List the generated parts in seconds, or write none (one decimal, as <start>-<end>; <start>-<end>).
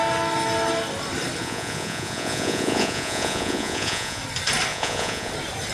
1.4-4.2; 4.7-5.3